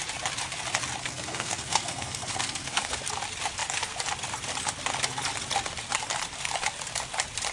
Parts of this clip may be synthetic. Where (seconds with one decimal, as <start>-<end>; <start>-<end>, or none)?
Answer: 1.0-3.0